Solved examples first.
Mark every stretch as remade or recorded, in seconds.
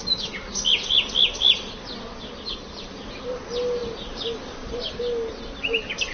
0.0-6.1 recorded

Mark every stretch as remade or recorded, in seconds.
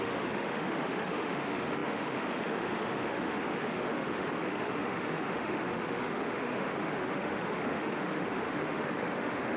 0.0-9.6 remade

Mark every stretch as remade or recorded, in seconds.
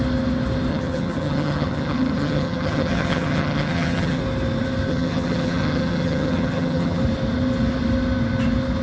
0.0-0.7 recorded; 0.7-4.2 remade; 4.2-4.9 recorded; 4.9-7.0 remade; 7.0-8.8 recorded